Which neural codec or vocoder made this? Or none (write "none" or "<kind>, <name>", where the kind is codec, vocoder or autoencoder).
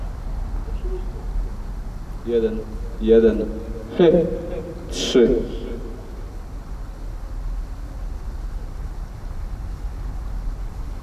none